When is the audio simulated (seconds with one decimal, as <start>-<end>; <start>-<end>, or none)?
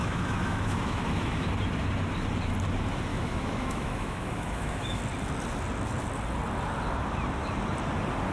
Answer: 0.0-1.5; 3.1-5.0